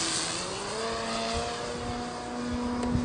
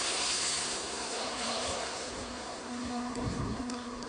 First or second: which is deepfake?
second